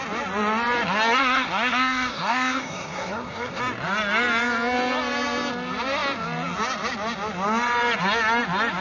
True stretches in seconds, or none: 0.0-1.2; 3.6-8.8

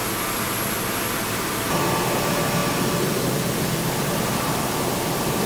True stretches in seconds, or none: 0.0-5.5

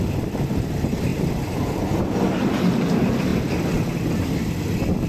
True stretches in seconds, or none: 0.0-5.1

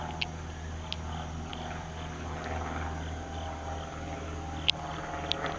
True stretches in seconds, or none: 0.0-5.6

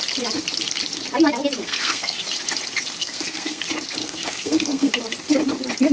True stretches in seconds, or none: 0.0-1.6; 2.2-3.0; 3.6-4.0; 4.9-5.9